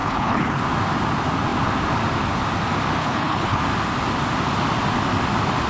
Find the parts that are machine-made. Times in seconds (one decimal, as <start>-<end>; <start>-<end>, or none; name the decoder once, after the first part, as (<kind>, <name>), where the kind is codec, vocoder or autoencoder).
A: 0.0-0.6 (codec, HILCodec); 3.0-3.6